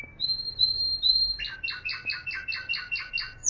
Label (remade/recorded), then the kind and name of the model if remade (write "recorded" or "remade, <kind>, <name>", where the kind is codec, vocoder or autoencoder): recorded